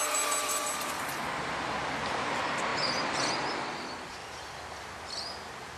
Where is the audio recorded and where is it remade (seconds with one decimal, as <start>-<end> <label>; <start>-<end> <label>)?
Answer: 0.0-2.7 recorded; 2.7-4.1 remade; 4.1-5.8 recorded